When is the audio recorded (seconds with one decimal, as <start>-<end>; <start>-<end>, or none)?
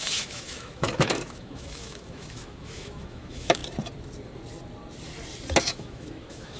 3.6-5.6